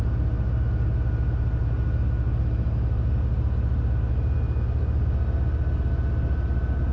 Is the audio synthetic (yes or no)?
no